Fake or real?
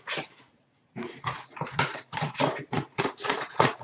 fake